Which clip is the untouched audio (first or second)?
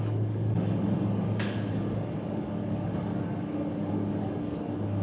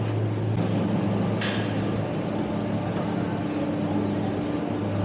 second